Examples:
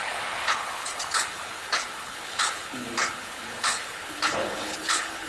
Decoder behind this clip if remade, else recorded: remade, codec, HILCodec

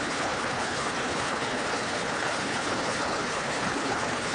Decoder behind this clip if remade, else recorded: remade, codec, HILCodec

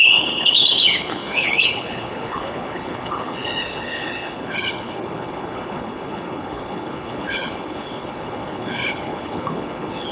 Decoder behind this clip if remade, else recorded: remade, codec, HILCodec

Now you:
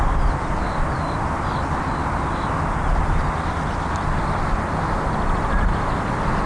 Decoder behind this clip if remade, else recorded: recorded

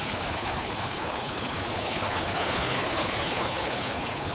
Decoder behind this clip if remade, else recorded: remade, codec, HILCodec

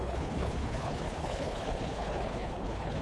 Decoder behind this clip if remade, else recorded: remade, codec, HILCodec